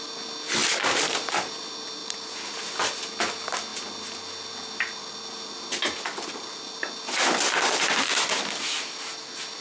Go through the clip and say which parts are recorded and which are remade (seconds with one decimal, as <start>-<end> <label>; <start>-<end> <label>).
0.0-0.6 recorded; 0.6-1.5 remade; 1.5-2.0 recorded; 2.0-2.7 remade; 2.7-9.6 recorded